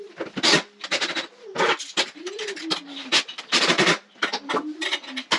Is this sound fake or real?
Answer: real